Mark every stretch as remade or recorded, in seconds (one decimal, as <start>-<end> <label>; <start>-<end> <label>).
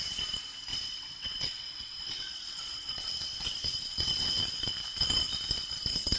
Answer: 0.0-0.7 recorded; 0.7-4.4 remade; 4.4-6.2 recorded